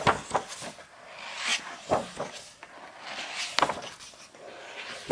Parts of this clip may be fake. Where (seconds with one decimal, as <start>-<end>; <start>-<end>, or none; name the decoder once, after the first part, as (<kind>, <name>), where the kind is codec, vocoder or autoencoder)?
none